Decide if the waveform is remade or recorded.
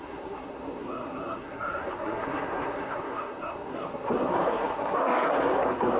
remade